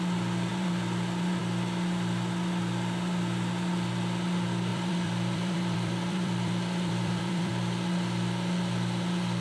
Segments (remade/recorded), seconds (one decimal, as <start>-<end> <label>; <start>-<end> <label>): 0.0-0.5 recorded; 0.5-1.4 remade; 1.4-4.7 recorded; 4.7-7.5 remade; 7.5-9.4 recorded